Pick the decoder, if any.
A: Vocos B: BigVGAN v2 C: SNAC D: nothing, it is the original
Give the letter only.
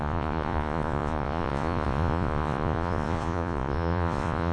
A